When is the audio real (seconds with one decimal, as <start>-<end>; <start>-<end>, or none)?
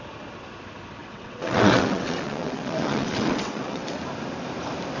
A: 0.0-1.0; 4.0-5.0